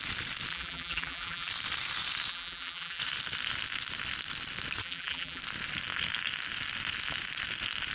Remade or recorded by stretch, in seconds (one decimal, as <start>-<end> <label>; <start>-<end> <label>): 0.0-0.5 recorded; 0.5-1.5 remade; 1.5-2.3 recorded; 2.3-3.0 remade; 3.0-4.8 recorded; 4.8-5.4 remade; 5.4-7.9 recorded